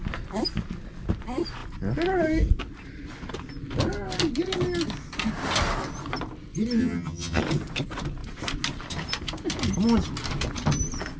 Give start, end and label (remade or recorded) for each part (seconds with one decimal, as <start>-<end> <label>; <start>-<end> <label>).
0.0-6.8 recorded; 6.8-7.4 remade; 7.4-11.2 recorded